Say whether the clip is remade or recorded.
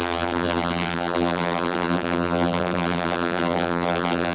remade